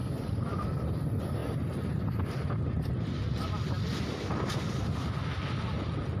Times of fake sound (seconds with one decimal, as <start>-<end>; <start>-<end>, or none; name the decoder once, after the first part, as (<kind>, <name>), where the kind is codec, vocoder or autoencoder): none